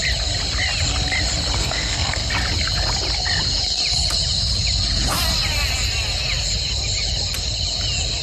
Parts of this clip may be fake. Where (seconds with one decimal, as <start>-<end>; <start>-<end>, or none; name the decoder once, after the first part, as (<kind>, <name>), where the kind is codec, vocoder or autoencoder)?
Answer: 1.6-2.3 (codec, SNAC)